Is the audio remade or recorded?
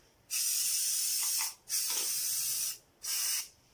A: recorded